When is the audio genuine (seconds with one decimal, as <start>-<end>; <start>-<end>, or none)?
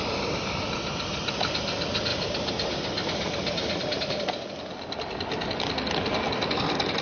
0.8-2.1; 4.3-7.0